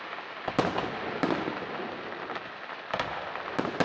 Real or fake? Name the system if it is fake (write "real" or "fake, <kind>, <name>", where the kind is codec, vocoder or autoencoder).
real